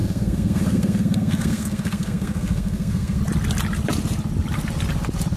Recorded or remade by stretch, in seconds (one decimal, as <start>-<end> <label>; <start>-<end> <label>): 0.0-3.2 remade; 3.2-5.4 recorded